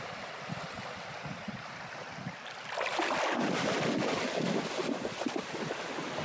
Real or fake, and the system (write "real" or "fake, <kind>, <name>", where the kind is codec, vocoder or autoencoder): real